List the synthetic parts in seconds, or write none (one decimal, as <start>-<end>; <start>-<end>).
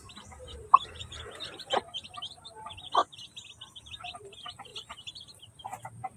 0.0-3.0; 3.8-6.2